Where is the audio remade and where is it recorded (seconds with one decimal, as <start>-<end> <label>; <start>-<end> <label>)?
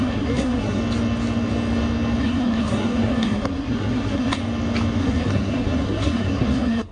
0.0-0.8 remade; 0.8-2.2 recorded; 2.2-4.4 remade; 4.4-5.0 recorded; 5.0-6.9 remade